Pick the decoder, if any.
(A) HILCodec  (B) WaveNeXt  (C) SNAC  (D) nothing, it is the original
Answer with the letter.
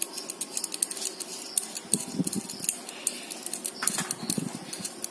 D